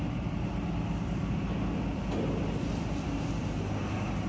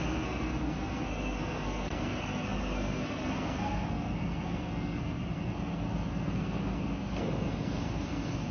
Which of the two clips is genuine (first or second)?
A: first